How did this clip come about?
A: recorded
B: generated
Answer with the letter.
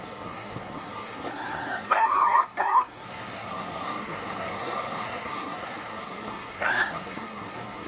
B